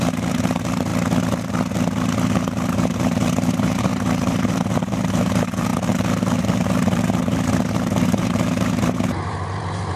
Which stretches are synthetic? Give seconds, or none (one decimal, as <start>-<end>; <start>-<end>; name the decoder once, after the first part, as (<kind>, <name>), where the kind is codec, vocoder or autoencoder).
0.0-0.9 (vocoder, BigVGAN v2); 2.3-10.0